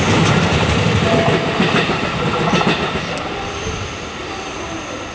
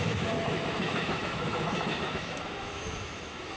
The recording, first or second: first